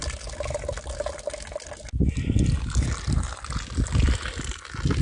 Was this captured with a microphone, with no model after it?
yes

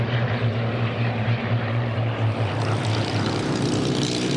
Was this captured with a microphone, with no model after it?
no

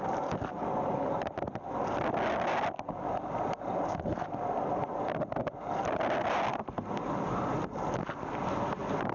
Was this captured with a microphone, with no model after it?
yes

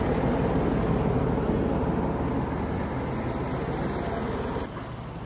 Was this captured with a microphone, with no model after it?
yes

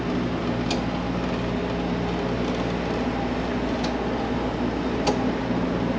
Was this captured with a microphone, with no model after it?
yes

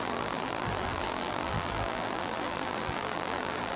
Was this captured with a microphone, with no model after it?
no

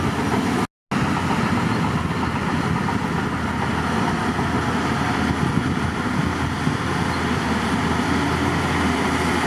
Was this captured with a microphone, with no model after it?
yes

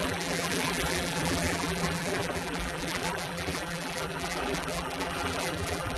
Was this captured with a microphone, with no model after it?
no